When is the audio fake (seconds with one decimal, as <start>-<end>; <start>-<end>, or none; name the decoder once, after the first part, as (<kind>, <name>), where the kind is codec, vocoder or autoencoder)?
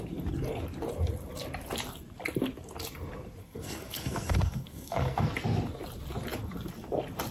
3.4-5.3 (codec, SNAC)